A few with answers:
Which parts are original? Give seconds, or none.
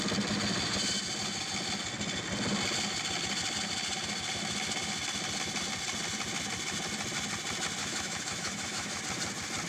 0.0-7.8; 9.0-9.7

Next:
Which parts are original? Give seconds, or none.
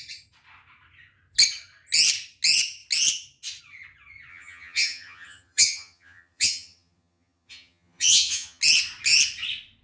0.0-4.3; 8.6-9.8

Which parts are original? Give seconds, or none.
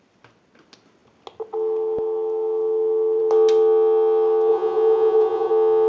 0.0-4.5; 5.5-5.9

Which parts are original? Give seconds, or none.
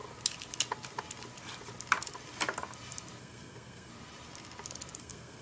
0.0-3.2; 3.9-5.0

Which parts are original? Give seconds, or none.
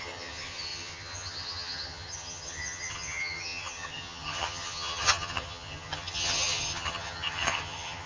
none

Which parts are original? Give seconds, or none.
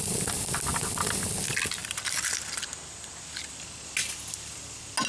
0.0-5.1